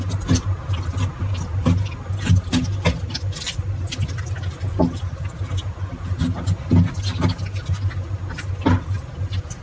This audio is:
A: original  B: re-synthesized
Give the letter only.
A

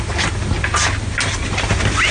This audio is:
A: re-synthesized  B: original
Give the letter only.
B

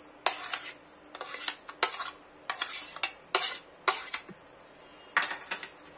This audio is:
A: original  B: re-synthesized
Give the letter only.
A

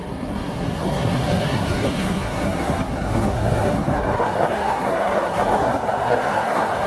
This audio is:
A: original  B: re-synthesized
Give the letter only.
B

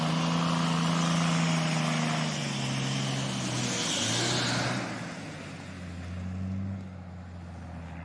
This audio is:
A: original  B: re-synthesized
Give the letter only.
A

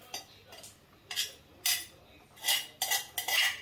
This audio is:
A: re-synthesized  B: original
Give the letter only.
B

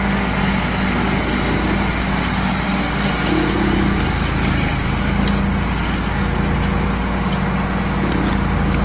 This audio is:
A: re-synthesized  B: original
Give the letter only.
B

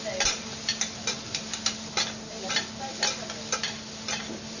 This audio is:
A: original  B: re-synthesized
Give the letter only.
A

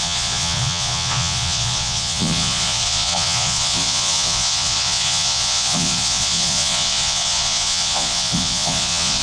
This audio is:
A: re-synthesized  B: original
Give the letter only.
A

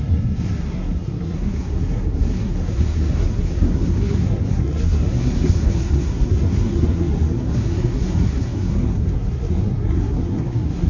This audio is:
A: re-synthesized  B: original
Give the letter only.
A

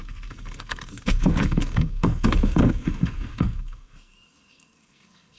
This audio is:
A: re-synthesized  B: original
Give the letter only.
A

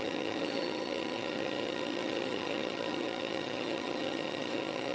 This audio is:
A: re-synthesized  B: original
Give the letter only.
A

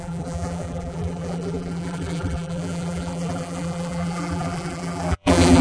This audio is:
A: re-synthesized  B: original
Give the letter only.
A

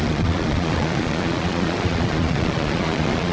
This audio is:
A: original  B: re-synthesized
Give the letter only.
B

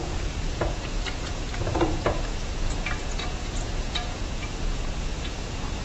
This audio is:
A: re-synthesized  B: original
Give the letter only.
A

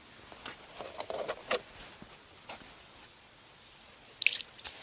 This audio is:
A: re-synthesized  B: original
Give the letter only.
B